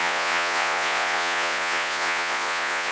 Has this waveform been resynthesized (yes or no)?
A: yes